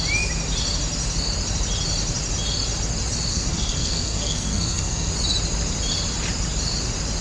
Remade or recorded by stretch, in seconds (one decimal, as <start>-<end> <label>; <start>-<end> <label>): 0.0-3.3 recorded; 3.3-5.1 remade; 5.1-7.2 recorded